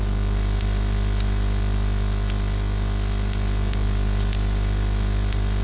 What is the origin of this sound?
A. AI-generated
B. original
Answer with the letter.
B